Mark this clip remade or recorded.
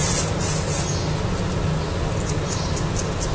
recorded